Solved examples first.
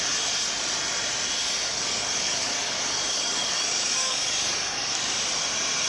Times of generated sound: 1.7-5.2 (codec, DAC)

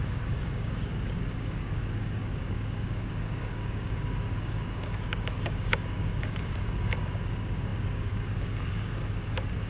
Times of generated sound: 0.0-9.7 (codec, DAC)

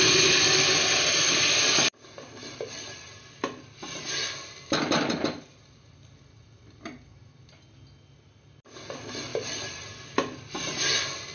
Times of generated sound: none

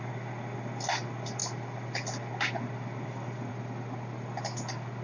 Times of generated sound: none

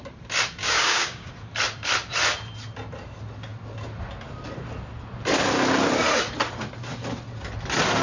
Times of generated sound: 0.6-1.3 (codec, DAC)

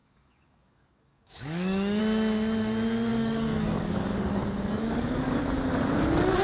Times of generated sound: 0.0-2.0 (codec, DAC); 3.1-5.4

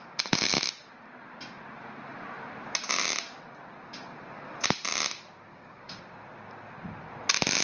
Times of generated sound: 5.5-6.0 (codec, DAC)